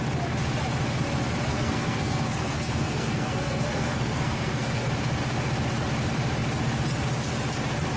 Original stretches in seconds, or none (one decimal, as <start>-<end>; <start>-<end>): 0.0-1.5; 4.9-8.0